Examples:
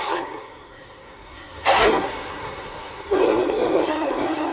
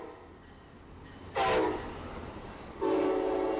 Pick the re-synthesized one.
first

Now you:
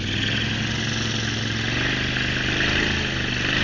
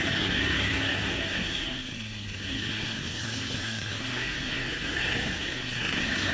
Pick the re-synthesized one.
second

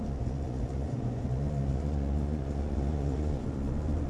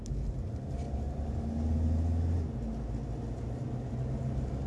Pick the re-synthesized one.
first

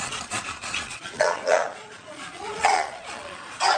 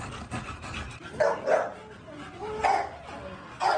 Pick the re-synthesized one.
first